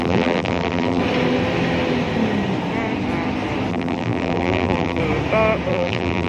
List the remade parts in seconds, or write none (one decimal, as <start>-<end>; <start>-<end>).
0.0-1.0; 3.7-5.0; 5.7-6.3